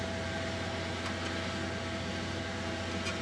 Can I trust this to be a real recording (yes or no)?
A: yes